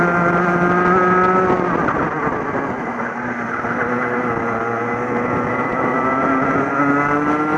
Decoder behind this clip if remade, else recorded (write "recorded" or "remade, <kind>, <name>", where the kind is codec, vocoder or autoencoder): recorded